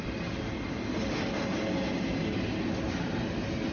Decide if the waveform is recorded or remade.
recorded